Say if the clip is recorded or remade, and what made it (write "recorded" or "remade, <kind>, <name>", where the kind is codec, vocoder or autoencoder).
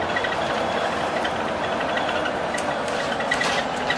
recorded